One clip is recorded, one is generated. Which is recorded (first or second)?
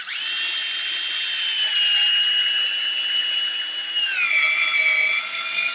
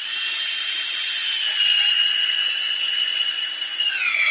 first